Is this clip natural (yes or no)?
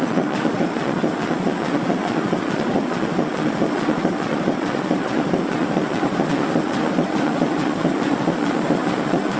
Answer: no